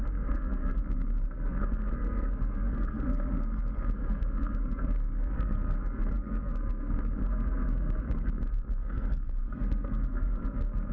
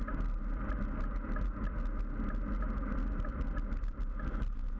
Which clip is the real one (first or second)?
second